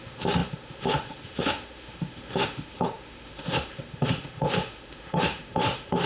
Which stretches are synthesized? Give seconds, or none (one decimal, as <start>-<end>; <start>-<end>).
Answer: 0.0-6.1

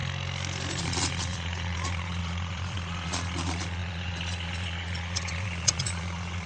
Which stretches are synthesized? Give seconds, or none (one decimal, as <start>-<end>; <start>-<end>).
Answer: 0.8-6.5

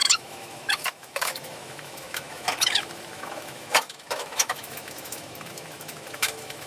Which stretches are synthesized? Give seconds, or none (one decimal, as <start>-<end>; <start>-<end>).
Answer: 0.0-6.7

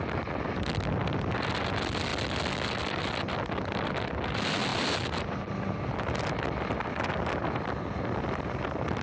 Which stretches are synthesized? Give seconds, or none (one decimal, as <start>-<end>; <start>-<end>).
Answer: none